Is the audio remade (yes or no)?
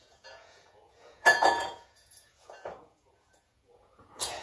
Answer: yes